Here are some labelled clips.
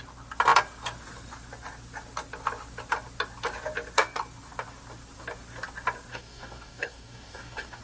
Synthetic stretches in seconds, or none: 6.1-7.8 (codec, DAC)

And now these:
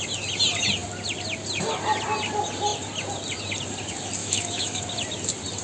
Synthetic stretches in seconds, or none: 4.2-4.8 (autoencoder, DAC-VAE)

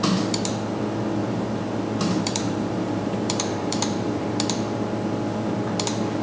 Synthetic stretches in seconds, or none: 1.2-4.2 (vocoder, BigVGAN v2)

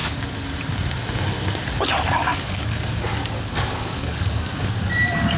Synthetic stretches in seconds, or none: 2.2-4.7 (codec, DAC)

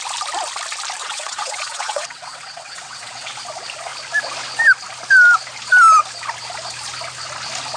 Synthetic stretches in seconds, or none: 1.0-3.3 (vocoder, WaveNeXt)